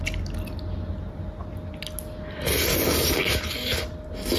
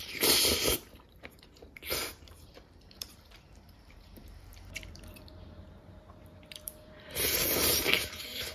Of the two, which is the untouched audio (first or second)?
first